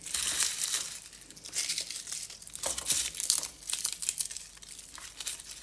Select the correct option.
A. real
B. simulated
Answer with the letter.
A